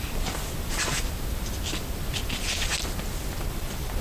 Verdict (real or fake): real